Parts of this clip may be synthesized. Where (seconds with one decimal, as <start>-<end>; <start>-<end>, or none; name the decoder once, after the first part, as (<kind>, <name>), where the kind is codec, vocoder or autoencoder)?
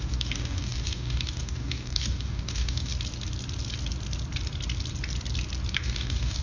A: 0.0-2.9 (codec, DAC); 5.7-6.4